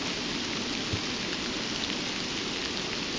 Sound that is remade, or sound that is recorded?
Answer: recorded